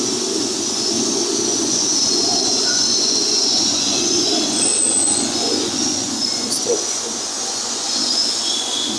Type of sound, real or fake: fake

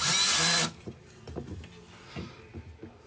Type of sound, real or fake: real